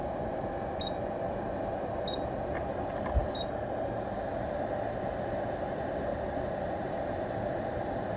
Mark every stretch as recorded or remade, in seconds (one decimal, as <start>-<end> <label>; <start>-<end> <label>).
0.0-8.2 recorded